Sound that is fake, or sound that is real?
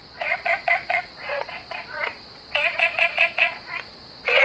fake